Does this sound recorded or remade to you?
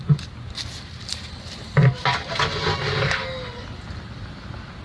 recorded